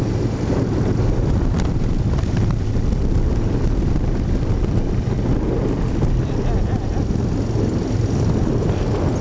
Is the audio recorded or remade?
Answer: recorded